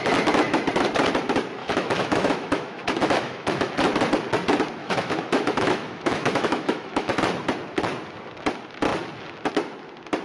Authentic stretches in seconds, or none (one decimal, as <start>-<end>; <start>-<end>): 0.0-1.6; 3.7-4.8; 7.2-10.2